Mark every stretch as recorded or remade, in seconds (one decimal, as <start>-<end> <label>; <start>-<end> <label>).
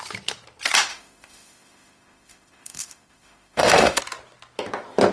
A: 0.0-0.9 recorded; 0.9-4.0 remade; 4.0-5.1 recorded